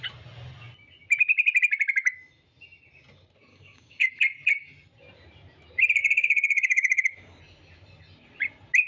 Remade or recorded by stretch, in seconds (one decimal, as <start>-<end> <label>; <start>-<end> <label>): 0.0-3.5 recorded; 3.5-4.1 remade; 4.1-6.0 recorded; 6.0-7.4 remade; 7.4-8.9 recorded